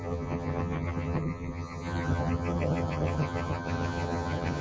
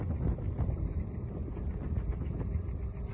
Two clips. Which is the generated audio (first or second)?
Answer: first